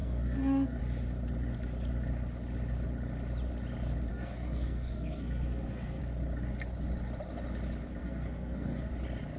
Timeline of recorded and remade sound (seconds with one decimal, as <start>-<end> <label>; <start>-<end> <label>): 0.0-0.8 remade; 0.8-4.1 recorded; 4.1-6.0 remade; 6.0-8.0 recorded; 8.0-8.9 remade; 8.9-9.4 recorded